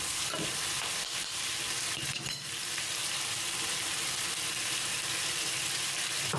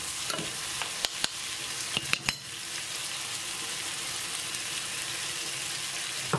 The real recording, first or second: second